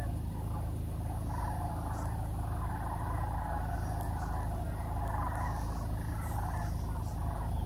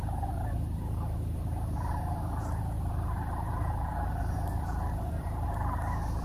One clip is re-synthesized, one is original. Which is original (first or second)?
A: first